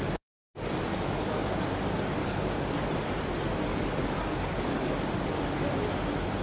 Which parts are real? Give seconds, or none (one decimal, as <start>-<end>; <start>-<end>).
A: 0.0-0.9; 1.6-2.2; 2.9-3.7; 5.0-6.4